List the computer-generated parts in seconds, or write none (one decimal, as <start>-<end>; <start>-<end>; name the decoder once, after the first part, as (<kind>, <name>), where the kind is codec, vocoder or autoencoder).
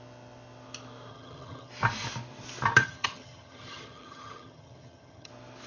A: 1.1-1.7 (vocoder, HiFi-GAN); 2.8-5.3